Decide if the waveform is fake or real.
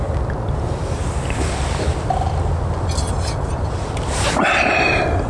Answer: real